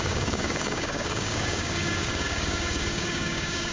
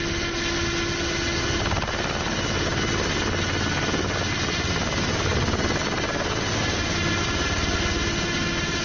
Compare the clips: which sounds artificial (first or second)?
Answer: first